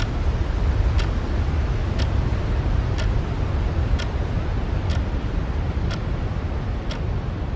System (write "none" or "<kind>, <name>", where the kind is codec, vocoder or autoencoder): none